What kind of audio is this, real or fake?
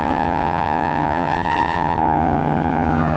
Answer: fake